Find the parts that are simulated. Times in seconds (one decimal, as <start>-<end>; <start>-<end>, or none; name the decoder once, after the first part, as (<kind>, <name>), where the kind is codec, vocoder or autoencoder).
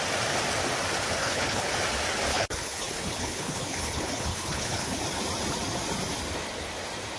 1.2-1.7 (codec, HILCodec); 2.3-5.0